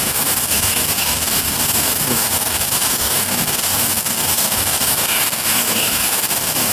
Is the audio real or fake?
fake